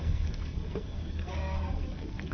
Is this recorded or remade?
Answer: remade